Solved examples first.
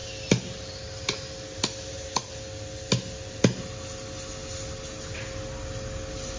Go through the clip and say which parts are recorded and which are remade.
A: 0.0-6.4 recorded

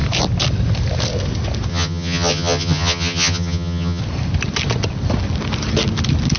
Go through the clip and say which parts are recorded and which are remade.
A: 0.0-1.7 recorded; 1.7-4.0 remade; 4.0-6.4 recorded

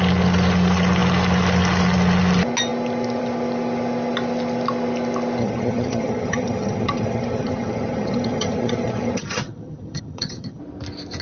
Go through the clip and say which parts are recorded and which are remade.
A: 0.0-5.4 recorded; 5.4-10.6 remade; 10.6-11.2 recorded

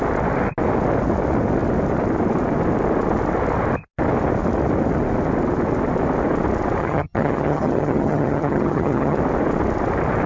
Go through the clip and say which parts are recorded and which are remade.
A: 0.0-6.8 recorded; 6.8-9.2 remade; 9.2-10.3 recorded